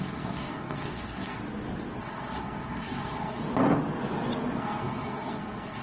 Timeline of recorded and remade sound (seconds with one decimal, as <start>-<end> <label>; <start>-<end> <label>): 0.0-1.4 remade; 1.4-2.0 recorded; 2.0-3.4 remade; 3.4-4.6 recorded; 4.6-5.8 remade